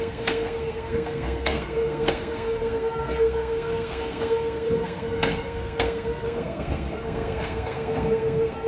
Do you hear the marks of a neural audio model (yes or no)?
yes